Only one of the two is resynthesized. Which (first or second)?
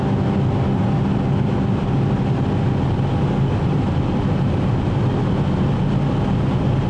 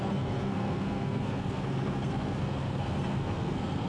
second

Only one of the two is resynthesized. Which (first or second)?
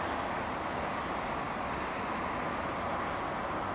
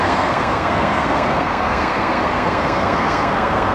second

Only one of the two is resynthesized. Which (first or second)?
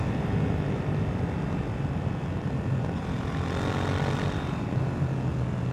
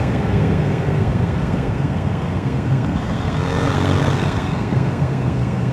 second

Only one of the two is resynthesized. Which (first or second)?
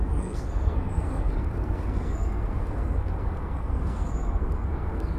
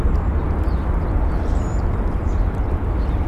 first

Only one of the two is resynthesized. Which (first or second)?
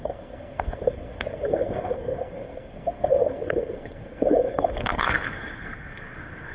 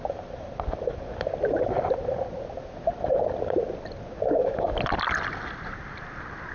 first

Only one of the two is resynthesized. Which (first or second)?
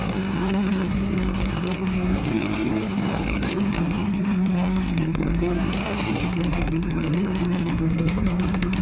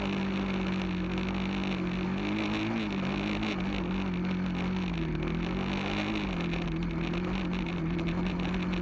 first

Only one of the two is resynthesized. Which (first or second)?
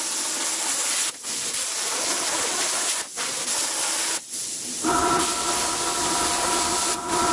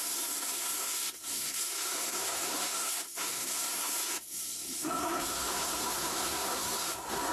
second